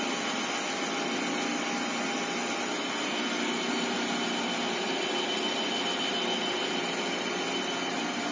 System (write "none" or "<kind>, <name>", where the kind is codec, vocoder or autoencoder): none